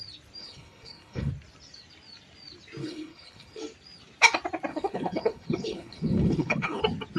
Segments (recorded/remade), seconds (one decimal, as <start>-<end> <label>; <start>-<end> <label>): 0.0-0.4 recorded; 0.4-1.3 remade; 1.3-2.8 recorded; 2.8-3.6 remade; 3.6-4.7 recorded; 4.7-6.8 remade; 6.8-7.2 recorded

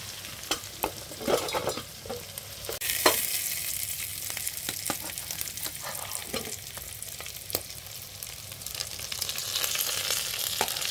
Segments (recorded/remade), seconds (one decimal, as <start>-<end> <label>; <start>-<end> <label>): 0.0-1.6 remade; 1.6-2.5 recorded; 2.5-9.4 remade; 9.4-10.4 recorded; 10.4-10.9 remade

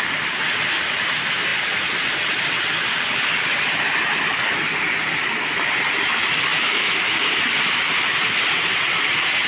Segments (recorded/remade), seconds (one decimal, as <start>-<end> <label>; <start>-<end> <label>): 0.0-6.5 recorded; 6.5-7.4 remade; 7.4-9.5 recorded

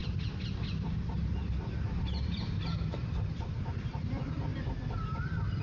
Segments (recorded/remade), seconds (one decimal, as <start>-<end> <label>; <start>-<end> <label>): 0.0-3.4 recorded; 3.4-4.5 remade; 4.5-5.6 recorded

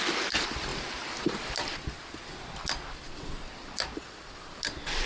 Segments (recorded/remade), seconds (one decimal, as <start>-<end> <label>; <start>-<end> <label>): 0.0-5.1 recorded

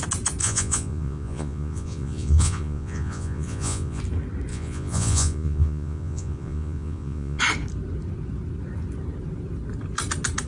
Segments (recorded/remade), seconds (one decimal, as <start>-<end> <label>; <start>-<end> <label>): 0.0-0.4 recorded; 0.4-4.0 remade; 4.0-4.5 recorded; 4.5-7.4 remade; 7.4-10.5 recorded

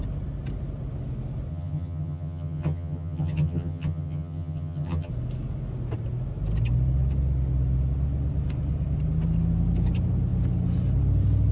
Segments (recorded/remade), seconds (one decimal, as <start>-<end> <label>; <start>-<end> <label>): 0.0-1.5 recorded; 1.5-5.1 remade; 5.1-11.5 recorded